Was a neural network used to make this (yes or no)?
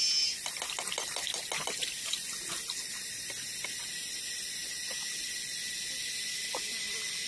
no